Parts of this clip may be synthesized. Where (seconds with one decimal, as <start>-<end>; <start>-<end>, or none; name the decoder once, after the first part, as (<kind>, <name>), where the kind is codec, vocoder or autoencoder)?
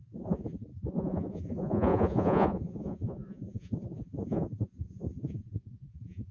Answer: 0.0-6.3 (vocoder, Vocos)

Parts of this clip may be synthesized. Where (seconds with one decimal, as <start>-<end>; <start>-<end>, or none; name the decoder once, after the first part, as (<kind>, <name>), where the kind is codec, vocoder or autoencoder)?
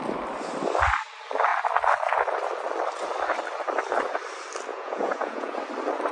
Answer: 4.7-5.6 (vocoder, Vocos)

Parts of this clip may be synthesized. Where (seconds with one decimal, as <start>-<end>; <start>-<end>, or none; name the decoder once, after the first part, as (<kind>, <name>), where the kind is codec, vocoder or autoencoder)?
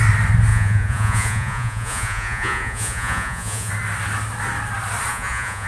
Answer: 0.5-3.7 (vocoder, Vocos); 5.1-5.7